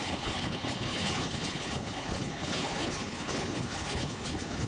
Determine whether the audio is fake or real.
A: fake